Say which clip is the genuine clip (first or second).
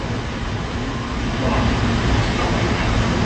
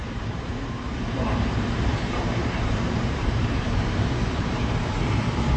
first